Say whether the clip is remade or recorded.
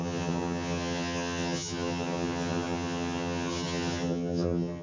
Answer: remade